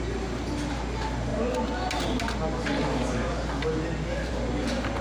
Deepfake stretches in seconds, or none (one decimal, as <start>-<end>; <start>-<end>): none